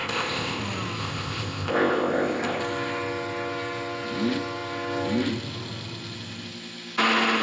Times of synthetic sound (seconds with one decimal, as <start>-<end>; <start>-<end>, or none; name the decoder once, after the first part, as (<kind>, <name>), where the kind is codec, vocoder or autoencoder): 0.0-0.6 (codec, ZipCodec); 1.0-2.6